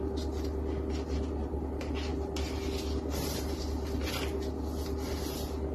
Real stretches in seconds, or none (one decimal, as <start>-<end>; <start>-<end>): 0.0-5.7